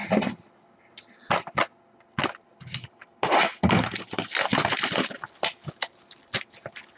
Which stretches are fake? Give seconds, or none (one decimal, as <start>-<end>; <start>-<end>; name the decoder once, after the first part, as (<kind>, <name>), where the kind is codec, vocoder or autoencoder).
none